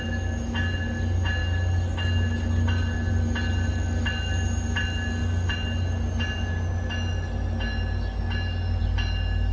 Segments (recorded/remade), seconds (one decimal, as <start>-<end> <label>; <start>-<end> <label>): 0.0-9.5 recorded